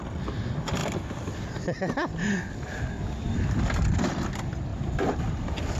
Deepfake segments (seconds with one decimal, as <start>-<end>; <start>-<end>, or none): 4.7-5.3